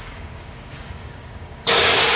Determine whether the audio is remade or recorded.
remade